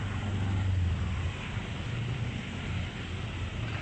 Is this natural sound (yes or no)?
yes